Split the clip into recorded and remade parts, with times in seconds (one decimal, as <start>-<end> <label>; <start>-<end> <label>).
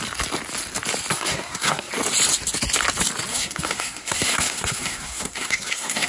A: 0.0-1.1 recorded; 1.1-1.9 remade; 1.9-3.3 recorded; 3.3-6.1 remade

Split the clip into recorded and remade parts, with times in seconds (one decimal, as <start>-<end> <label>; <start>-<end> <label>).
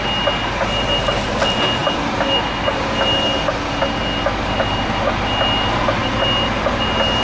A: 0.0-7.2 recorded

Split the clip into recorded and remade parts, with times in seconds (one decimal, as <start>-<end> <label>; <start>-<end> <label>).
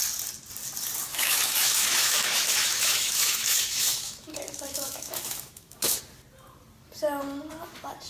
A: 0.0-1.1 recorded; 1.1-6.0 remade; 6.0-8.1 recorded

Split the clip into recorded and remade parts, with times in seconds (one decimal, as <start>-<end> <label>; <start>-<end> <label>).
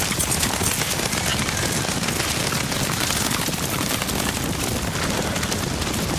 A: 0.0-6.2 recorded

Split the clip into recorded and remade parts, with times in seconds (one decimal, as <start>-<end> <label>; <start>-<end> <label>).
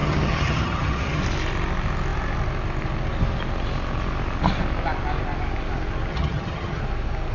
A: 0.0-1.2 remade; 1.2-6.1 recorded; 6.1-6.8 remade; 6.8-7.3 recorded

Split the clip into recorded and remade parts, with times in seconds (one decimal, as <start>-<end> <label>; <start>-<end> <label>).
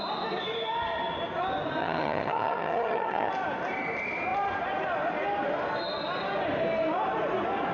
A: 0.0-1.8 recorded; 1.8-3.3 remade; 3.3-7.7 recorded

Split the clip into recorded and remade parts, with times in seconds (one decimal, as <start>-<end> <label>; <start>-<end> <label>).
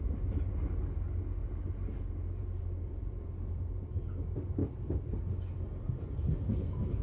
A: 0.0-1.4 recorded; 1.4-3.9 remade; 3.9-4.6 recorded; 4.6-5.2 remade; 5.2-7.0 recorded